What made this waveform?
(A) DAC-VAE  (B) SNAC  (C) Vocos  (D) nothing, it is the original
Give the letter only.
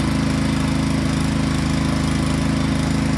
D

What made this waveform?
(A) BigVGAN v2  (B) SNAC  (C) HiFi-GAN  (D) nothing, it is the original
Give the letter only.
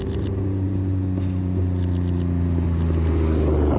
D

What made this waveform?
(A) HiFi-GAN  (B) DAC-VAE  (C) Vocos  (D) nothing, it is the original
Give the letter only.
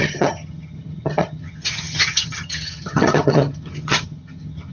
A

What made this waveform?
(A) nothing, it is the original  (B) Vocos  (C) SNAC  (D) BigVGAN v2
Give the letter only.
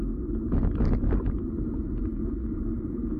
A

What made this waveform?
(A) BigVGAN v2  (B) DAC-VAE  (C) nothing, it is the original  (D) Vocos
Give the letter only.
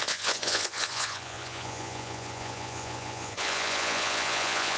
D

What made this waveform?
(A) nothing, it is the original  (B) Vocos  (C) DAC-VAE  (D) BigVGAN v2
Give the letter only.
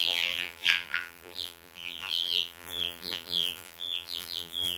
D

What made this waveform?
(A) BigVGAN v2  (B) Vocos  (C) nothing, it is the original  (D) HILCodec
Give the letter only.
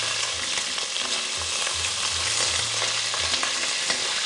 C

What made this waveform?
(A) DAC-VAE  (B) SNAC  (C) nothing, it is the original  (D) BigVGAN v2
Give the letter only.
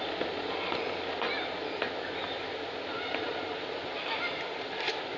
C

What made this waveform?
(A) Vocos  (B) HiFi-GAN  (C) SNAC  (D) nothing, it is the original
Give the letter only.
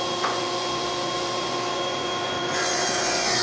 A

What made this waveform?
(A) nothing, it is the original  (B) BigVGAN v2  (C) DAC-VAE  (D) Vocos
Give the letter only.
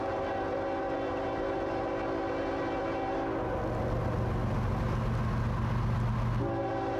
A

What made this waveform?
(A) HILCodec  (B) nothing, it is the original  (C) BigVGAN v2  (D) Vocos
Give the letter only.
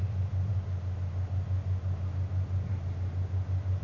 B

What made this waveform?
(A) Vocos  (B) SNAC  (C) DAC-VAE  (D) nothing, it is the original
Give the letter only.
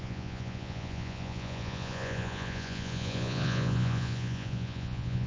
A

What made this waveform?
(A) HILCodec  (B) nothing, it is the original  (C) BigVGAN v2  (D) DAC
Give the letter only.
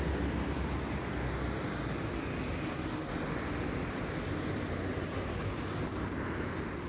B